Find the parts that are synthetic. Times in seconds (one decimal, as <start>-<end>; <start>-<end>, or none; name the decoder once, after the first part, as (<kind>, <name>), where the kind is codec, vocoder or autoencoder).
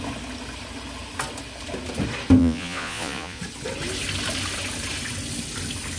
2.4-3.4 (vocoder, Vocos)